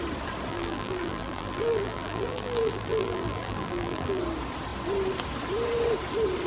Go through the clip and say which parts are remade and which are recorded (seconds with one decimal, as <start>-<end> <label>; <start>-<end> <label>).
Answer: 0.0-0.5 recorded; 0.5-4.2 remade; 4.2-6.5 recorded